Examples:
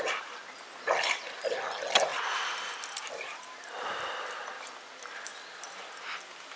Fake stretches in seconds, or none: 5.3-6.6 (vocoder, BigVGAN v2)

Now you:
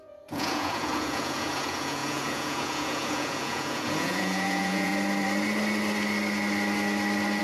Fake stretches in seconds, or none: 0.0-4.9 (vocoder, Vocos)

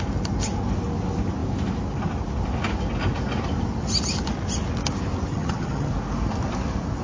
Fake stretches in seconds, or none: 5.3-5.9 (vocoder, HiFi-GAN)

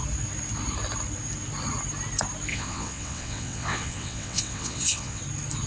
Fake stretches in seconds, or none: 2.5-5.2 (vocoder, WaveNeXt)

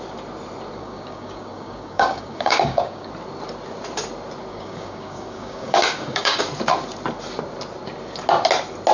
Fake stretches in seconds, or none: 0.8-3.1 (codec, DAC); 4.5-6.4

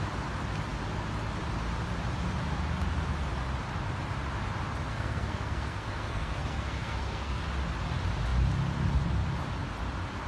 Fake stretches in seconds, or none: 4.9-7.4 (codec, SNAC)

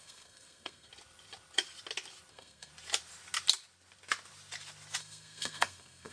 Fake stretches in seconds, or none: 0.0-0.9 (codec, SNAC); 2.3-2.7; 5.0-6.1

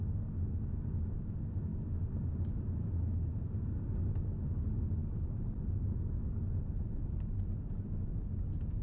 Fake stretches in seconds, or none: 1.7-2.9 (vocoder, BigVGAN v2); 5.0-7.9